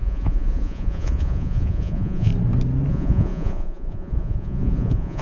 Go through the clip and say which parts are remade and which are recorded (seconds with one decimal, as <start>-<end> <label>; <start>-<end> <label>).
0.0-2.3 remade; 2.3-2.9 recorded; 2.9-5.2 remade